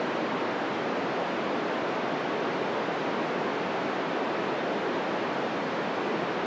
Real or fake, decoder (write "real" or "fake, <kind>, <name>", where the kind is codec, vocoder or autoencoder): real